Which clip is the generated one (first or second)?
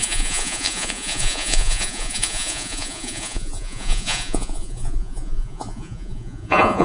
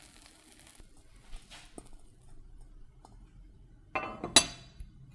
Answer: first